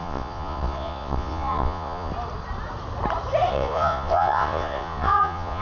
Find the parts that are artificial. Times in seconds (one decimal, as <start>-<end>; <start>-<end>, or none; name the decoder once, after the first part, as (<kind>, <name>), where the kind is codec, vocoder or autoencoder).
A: 0.0-2.1 (vocoder, Vocos); 3.5-5.6